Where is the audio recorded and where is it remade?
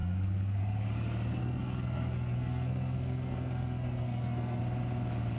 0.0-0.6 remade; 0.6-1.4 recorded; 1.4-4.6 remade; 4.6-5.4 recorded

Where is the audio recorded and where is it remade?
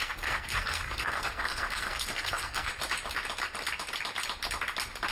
0.0-2.7 remade; 2.7-5.1 recorded